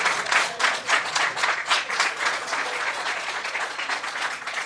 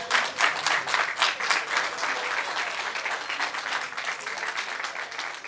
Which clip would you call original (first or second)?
second